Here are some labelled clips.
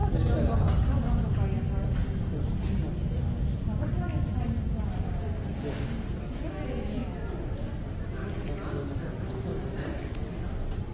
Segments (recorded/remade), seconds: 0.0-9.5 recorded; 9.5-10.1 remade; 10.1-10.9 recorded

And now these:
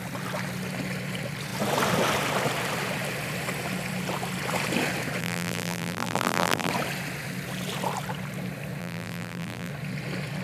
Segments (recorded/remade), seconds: 0.0-5.2 recorded; 5.2-6.7 remade; 6.7-8.8 recorded; 8.8-9.7 remade; 9.7-10.4 recorded

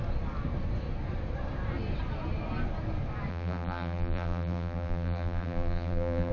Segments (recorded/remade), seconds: 0.0-3.3 recorded; 3.3-6.3 remade

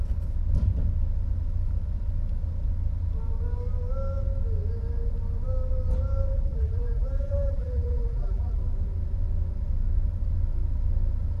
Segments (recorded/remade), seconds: 0.0-6.3 recorded; 6.3-8.6 remade; 8.6-11.4 recorded